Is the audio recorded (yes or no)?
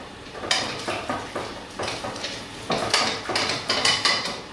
no